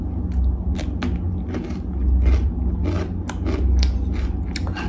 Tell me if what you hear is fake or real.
real